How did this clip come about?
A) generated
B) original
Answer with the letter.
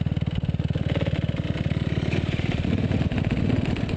B